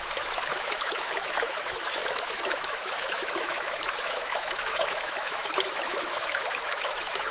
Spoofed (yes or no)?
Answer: yes